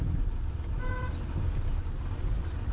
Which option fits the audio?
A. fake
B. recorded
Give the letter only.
B